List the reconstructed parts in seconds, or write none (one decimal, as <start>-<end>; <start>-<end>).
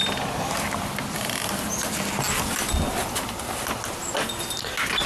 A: 2.9-3.6